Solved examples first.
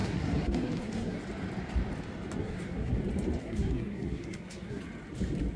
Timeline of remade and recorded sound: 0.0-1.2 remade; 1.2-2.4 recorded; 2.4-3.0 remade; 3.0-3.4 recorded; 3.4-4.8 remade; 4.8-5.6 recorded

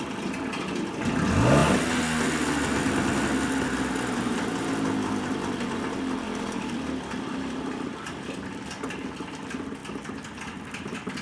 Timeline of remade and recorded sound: 0.0-11.2 recorded

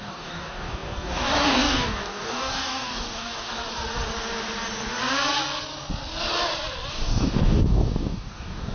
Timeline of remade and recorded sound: 0.0-3.6 remade; 3.6-6.9 recorded; 6.9-8.7 remade

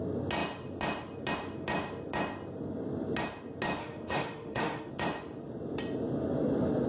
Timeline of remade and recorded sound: 0.0-3.8 recorded; 3.8-4.9 remade; 4.9-6.9 recorded

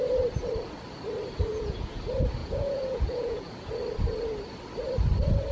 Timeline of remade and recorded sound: 0.0-1.5 recorded; 1.5-2.0 remade; 2.0-2.4 recorded; 2.4-3.5 remade; 3.5-5.5 recorded

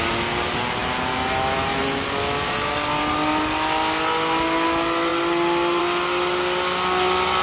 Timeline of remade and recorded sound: 0.0-7.4 recorded

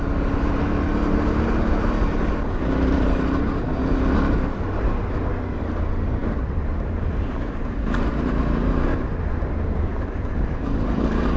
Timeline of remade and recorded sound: 0.0-3.8 remade; 3.8-5.6 recorded; 5.6-8.9 remade; 8.9-9.9 recorded; 9.9-11.4 remade

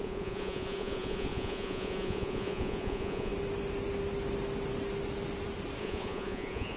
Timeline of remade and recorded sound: 0.0-3.3 remade; 3.3-5.8 recorded; 5.8-6.8 remade